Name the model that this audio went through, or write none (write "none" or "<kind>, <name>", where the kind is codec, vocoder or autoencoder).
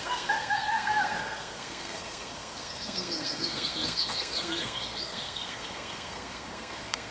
codec, SNAC